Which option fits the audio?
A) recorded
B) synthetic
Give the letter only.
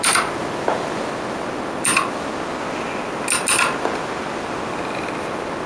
A